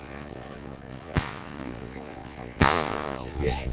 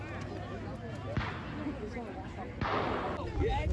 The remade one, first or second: first